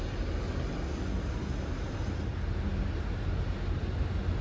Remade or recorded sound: recorded